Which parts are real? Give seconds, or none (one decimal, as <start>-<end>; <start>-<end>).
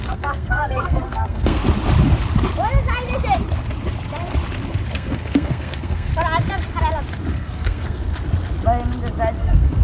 1.6-4.9; 6.1-7.3; 8.1-9.4